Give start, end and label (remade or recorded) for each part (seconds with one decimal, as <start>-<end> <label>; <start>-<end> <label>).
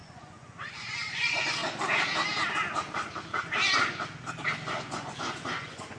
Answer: 0.0-1.6 remade; 1.6-4.7 recorded; 4.7-6.0 remade